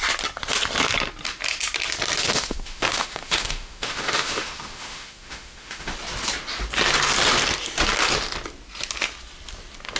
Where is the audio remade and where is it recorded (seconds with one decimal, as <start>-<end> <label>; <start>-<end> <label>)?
0.0-2.2 recorded; 2.2-5.9 remade; 5.9-10.0 recorded